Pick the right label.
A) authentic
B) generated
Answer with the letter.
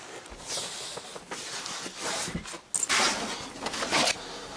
A